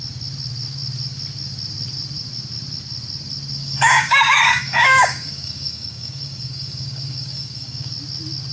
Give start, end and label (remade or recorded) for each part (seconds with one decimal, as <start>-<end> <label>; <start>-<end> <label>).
0.0-3.6 recorded; 3.6-7.9 remade; 7.9-8.5 recorded